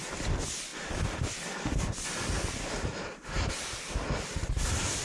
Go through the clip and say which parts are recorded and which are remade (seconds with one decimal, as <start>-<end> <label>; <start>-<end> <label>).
0.0-5.0 recorded